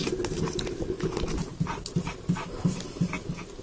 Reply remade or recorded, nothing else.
recorded